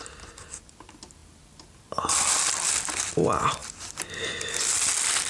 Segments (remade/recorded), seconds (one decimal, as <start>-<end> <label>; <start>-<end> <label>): 0.0-5.3 recorded